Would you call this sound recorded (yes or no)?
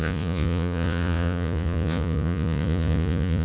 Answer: no